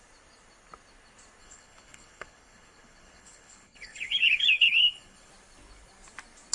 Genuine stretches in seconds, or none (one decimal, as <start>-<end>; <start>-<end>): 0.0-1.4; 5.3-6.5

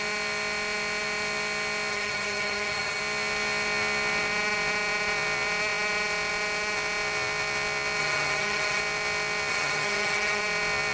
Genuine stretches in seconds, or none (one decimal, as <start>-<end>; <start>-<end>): 0.0-1.9; 3.0-8.0; 8.8-9.5; 10.4-10.9

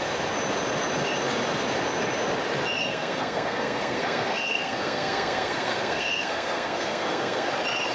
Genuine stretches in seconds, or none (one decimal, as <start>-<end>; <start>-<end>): 0.0-2.8; 7.5-7.9

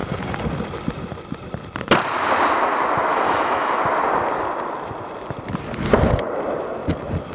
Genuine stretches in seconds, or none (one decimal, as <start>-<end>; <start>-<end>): 0.0-3.1; 3.8-7.3